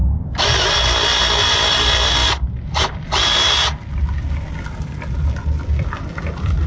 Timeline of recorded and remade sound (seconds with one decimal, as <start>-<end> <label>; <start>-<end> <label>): 0.0-6.7 recorded